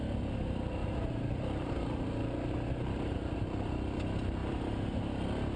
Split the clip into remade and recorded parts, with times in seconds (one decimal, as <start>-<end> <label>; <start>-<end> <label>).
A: 0.0-0.8 recorded; 0.8-3.3 remade; 3.3-5.6 recorded